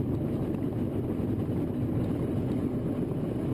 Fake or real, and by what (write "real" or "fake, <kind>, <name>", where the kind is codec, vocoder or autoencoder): real